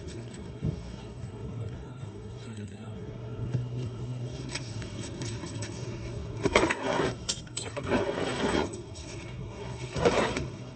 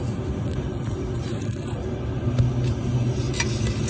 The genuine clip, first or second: second